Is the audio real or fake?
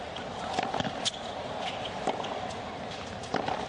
real